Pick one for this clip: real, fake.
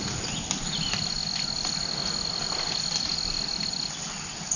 real